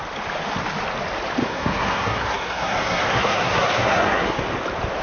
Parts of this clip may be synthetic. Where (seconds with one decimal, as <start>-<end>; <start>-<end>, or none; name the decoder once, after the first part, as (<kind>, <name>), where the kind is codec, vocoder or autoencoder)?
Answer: 1.4-4.4 (codec, SNAC)